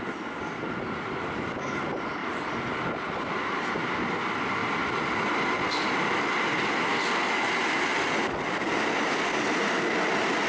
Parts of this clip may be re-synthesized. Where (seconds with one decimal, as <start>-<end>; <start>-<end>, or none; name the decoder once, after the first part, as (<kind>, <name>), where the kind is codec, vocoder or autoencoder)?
2.2-3.7 (vocoder, BigVGAN v2)